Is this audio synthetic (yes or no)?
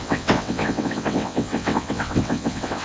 yes